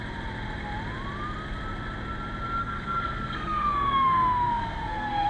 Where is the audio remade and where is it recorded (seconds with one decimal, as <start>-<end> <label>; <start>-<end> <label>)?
0.0-2.6 recorded; 2.6-5.3 remade